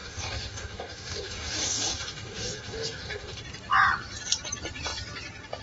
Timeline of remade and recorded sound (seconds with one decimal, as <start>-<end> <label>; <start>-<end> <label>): 0.0-3.4 remade; 3.4-5.6 recorded